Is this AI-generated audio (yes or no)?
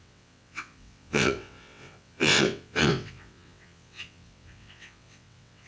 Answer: yes